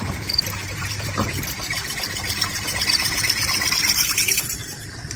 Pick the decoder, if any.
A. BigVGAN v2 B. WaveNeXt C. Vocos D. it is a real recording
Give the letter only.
A